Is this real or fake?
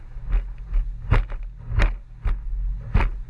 real